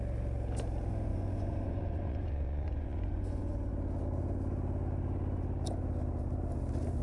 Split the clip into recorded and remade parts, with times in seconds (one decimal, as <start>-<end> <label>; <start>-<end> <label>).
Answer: 0.0-1.1 recorded; 1.1-3.7 remade; 3.7-7.0 recorded